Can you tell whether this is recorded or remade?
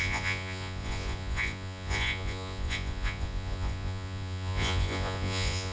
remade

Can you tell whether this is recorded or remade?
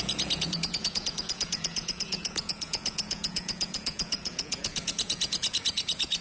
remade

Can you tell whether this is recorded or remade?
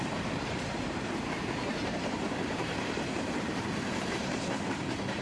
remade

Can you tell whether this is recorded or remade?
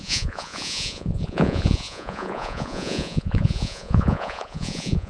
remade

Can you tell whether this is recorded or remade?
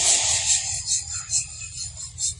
recorded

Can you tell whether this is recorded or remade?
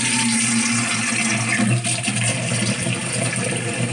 recorded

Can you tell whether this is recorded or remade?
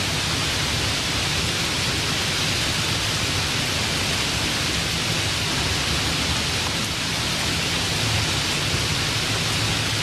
recorded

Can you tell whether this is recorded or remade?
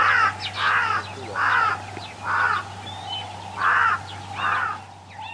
recorded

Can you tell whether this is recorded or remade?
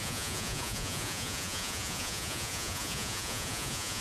remade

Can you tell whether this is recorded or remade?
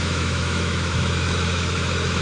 remade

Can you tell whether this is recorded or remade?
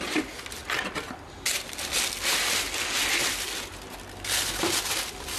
recorded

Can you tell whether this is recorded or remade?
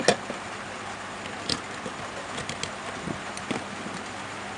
recorded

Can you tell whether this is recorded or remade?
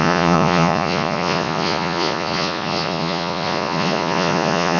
remade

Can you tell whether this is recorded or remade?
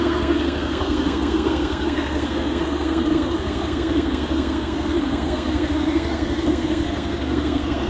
remade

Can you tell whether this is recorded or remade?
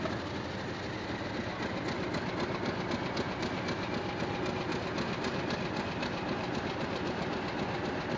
recorded